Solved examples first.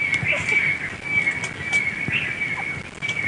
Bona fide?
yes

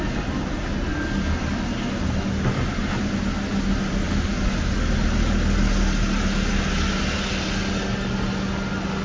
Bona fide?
yes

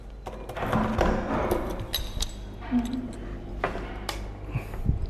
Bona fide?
yes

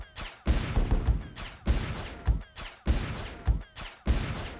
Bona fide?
yes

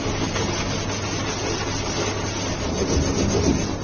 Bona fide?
yes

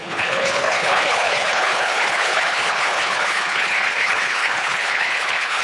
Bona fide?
no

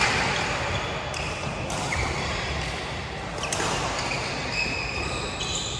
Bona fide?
yes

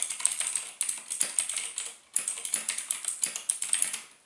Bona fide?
yes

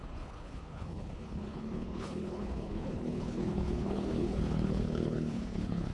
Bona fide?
no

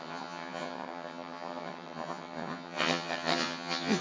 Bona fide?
no